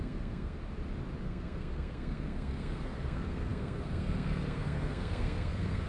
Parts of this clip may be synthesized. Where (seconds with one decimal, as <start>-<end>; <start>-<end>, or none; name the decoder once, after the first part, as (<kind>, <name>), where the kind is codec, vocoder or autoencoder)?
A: 0.0-0.6 (codec, SNAC); 1.2-5.9